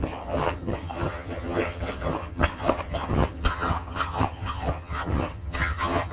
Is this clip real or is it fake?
fake